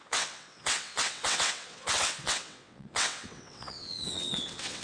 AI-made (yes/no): yes